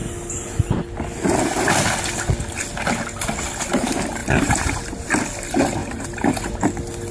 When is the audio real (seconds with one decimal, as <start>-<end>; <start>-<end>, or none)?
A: 0.0-4.2; 4.8-5.8; 6.5-7.1